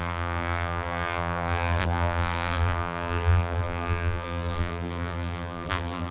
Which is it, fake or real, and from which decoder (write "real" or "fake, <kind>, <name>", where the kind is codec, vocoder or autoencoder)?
fake, vocoder, BigVGAN v2